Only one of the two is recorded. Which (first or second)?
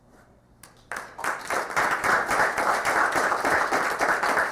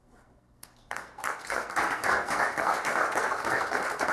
first